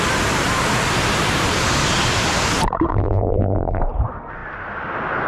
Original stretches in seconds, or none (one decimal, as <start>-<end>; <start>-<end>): 0.0-2.9; 3.8-5.3